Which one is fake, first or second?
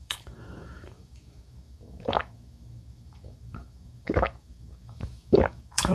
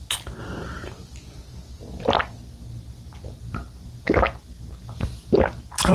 first